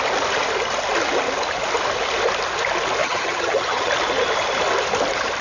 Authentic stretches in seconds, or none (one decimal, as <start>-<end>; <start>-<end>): 0.0-3.0; 3.9-5.4